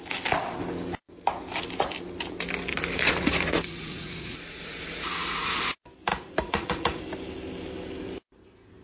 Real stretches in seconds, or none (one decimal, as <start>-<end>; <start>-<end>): 0.0-2.7; 5.6-6.1; 7.0-8.8

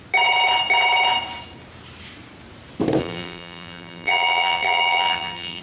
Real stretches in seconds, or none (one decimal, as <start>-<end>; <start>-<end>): 0.0-3.0

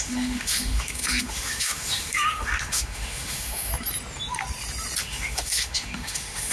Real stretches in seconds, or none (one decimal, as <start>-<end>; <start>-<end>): 3.7-5.0

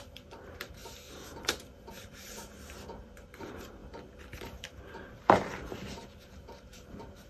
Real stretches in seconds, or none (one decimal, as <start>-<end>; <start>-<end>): 3.8-4.4

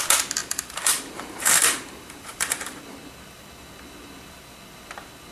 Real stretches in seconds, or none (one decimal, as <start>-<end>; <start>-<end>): 0.0-0.4; 2.8-5.3

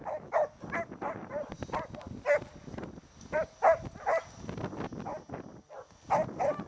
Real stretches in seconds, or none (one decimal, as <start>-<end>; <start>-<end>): 0.6-6.7